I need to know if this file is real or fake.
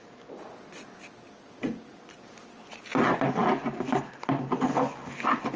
real